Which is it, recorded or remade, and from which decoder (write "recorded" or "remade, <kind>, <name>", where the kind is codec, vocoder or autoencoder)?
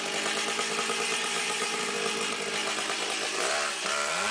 recorded